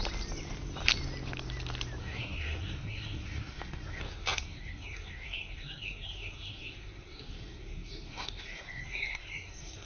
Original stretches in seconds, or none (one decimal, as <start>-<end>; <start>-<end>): 0.0-2.0